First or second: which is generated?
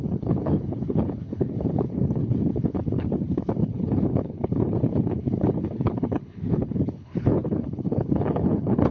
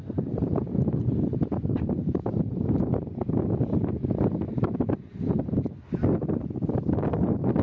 first